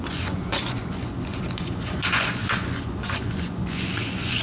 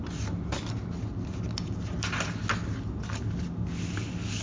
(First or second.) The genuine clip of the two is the second